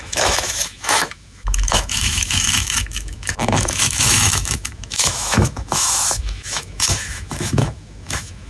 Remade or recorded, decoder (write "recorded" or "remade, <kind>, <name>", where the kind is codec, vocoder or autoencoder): remade, autoencoder, DAC-VAE